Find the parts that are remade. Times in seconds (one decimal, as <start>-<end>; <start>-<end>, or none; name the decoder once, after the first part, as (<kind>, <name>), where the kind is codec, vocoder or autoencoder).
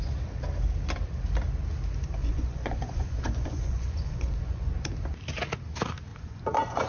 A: 2.2-4.9 (vocoder, Vocos); 6.1-6.9